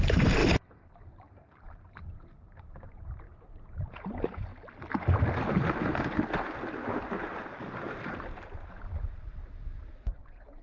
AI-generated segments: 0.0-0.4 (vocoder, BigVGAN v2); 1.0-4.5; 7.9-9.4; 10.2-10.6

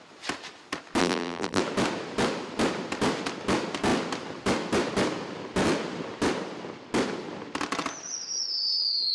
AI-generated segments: 1.0-1.6 (vocoder, BigVGAN v2)

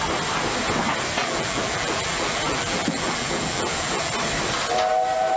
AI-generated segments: 1.2-4.1 (vocoder, BigVGAN v2)